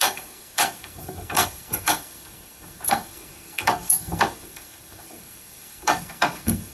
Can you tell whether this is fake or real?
fake